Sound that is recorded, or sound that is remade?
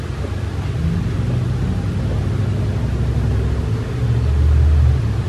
recorded